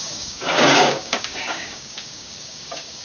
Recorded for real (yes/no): no